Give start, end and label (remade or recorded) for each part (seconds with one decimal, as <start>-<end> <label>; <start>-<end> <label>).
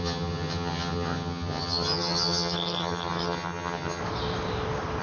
0.0-4.0 remade; 4.0-5.0 recorded